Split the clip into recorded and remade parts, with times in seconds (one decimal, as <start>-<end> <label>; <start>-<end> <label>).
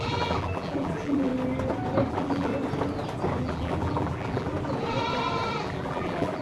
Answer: 0.0-1.3 remade; 1.3-2.1 recorded; 2.1-2.5 remade; 2.5-3.4 recorded; 3.4-4.5 remade; 4.5-5.6 recorded; 5.6-6.4 remade